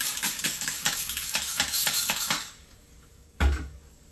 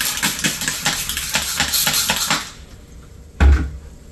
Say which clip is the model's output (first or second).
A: first